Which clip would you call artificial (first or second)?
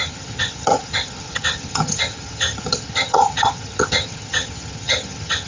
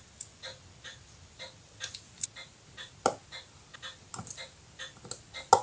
first